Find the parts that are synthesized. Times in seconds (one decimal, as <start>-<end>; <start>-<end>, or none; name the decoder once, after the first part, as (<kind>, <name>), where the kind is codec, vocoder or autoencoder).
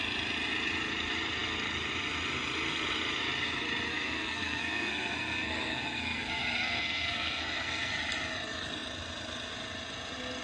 3.9-7.9 (codec, SNAC)